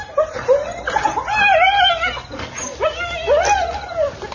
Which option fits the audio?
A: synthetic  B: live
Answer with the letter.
B